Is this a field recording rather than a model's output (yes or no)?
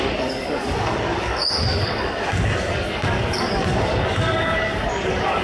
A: no